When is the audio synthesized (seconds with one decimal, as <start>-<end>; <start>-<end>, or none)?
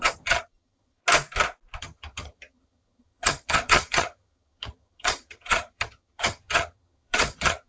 0.0-1.0; 1.8-7.7